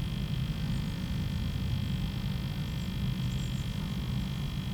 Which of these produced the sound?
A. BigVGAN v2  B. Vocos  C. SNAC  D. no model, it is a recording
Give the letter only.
D